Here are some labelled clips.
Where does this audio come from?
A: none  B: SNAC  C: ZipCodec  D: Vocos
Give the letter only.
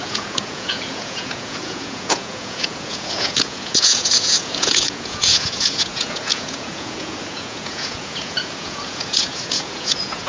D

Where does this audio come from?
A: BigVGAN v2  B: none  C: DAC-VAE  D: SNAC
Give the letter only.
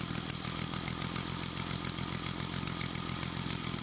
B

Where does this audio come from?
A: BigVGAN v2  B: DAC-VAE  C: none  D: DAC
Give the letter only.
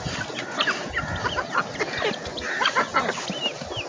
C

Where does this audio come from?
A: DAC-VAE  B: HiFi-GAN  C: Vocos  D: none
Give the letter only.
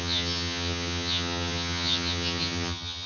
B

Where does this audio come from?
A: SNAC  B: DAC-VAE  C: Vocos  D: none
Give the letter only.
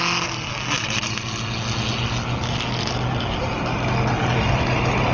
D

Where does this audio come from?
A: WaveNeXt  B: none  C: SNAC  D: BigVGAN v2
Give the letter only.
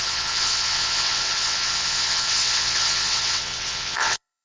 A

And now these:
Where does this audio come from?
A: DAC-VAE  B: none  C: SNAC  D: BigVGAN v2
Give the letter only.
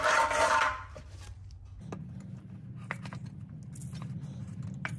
B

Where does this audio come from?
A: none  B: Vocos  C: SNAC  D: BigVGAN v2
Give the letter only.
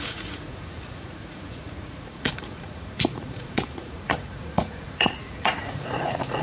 B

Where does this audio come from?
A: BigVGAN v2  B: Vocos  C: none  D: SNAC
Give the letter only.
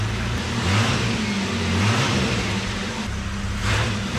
C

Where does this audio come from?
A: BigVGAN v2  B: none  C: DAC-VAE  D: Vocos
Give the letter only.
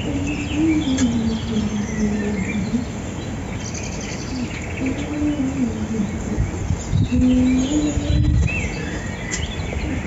B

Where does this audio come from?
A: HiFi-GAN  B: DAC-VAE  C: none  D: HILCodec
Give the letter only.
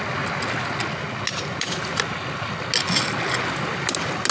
C